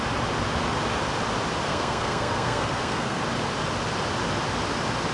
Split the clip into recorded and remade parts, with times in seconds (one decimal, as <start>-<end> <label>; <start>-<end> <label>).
0.0-1.7 recorded; 1.7-3.2 remade; 3.2-5.1 recorded